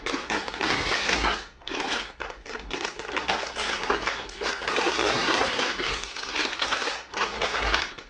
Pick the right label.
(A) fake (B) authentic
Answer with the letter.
A